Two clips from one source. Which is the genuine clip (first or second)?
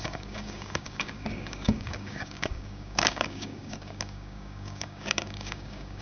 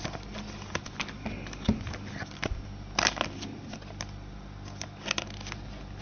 second